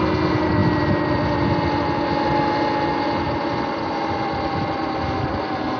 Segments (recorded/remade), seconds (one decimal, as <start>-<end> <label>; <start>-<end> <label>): 0.0-5.8 recorded